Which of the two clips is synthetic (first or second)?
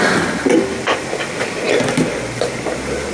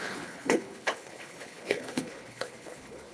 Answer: second